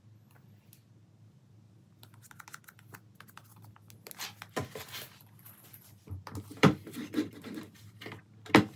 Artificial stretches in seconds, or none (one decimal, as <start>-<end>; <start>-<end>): 6.5-7.3